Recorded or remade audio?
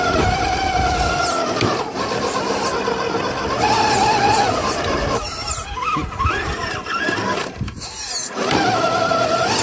recorded